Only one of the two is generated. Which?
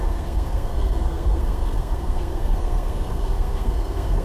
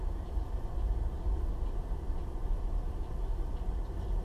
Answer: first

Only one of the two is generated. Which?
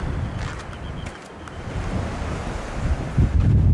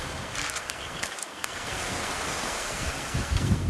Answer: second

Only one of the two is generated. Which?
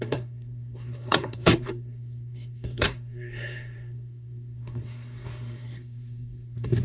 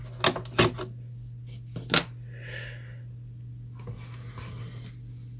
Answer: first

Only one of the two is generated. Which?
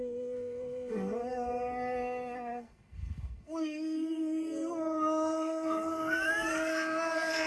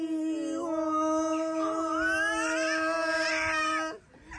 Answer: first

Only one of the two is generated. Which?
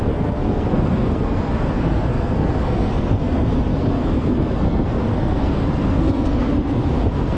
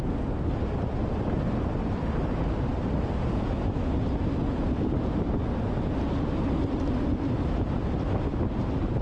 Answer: first